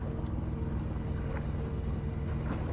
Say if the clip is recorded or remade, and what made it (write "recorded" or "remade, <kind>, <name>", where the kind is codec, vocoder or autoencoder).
recorded